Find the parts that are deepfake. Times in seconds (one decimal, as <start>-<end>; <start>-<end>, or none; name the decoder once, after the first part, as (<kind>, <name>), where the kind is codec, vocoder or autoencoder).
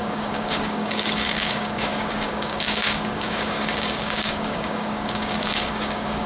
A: 0.0-6.3 (codec, DAC)